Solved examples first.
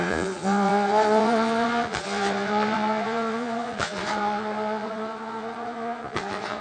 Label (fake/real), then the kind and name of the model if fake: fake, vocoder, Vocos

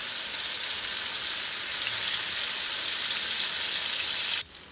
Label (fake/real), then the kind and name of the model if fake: real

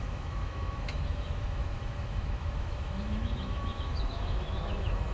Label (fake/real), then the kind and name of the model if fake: fake, autoencoder, DAC-VAE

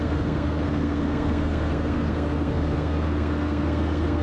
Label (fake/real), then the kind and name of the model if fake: fake, codec, SNAC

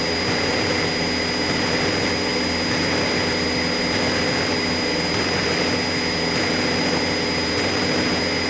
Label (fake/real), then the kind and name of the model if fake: real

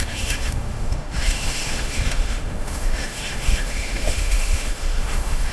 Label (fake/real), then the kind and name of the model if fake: fake, autoencoder, DAC-VAE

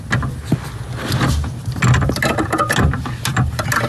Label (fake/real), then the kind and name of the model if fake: real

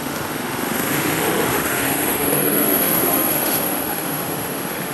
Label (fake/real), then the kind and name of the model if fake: fake, autoencoder, DAC-VAE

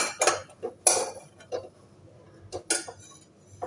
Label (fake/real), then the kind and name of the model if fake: real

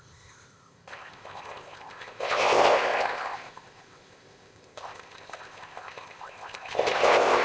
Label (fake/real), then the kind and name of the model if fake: fake, codec, ZipCodec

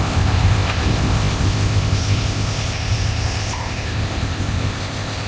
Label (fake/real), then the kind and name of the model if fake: fake, codec, ZipCodec